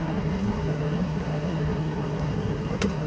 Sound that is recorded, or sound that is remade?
remade